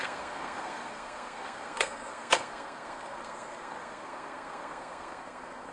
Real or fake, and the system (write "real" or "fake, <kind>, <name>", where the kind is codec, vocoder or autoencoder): fake, codec, SNAC